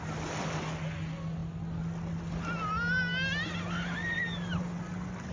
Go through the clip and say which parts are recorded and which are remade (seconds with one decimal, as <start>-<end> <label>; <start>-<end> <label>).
0.0-5.3 recorded